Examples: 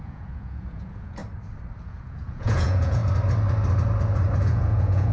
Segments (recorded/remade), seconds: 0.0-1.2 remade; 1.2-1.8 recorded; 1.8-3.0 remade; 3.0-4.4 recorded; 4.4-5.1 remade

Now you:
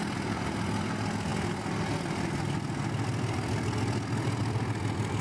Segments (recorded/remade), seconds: 0.0-5.2 recorded

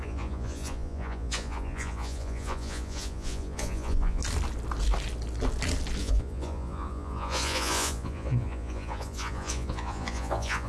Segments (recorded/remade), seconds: 0.0-4.2 remade; 4.2-6.0 recorded; 6.0-10.7 remade

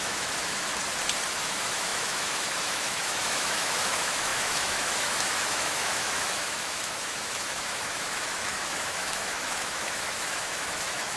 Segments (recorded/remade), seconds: 0.0-0.7 remade; 0.7-1.4 recorded; 1.4-11.2 remade